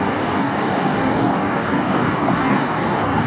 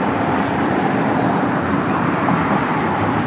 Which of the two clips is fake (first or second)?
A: first